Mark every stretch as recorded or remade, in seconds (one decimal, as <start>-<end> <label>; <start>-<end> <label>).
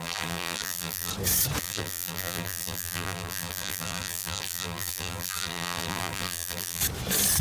0.0-1.1 remade; 1.1-1.6 recorded; 1.6-6.8 remade; 6.8-7.4 recorded